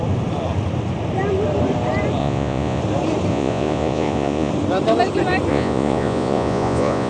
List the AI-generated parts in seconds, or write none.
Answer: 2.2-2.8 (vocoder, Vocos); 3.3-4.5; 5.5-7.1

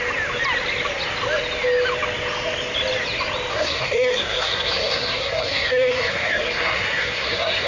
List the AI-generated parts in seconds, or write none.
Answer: 3.5-7.7 (codec, SNAC)

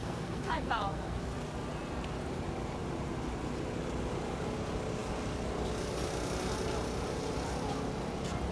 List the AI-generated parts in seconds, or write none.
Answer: 0.0-1.2 (codec, SNAC)

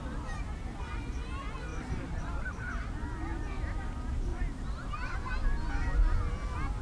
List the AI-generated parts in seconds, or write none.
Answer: 1.7-2.9 (vocoder, BigVGAN v2); 4.3-5.7

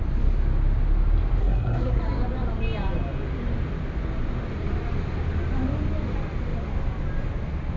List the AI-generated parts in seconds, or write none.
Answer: 1.4-2.0 (codec, SNAC)

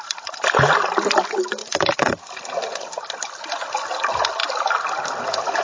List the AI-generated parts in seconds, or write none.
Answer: none